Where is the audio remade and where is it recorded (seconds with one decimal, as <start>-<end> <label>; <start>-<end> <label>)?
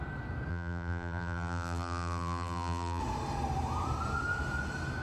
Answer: 0.0-0.5 recorded; 0.5-3.0 remade; 3.0-5.0 recorded